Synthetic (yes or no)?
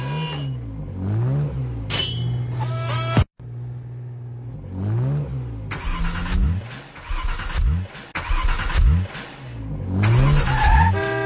no